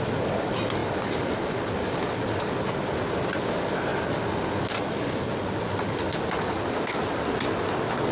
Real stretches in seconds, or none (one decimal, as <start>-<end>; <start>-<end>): 0.0-8.1